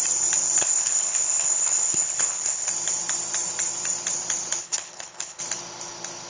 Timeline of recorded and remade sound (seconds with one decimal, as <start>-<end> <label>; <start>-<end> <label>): 0.0-0.6 recorded; 0.6-2.7 remade; 2.7-4.6 recorded; 4.6-5.4 remade; 5.4-6.3 recorded